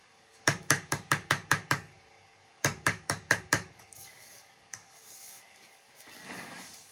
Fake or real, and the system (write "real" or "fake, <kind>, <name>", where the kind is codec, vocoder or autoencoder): fake, codec, DAC